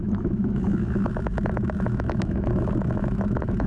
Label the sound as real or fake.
fake